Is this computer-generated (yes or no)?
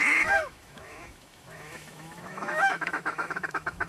yes